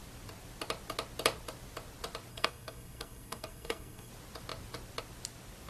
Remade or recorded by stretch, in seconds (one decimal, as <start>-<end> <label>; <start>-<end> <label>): 0.0-2.3 recorded; 2.3-4.1 remade; 4.1-5.7 recorded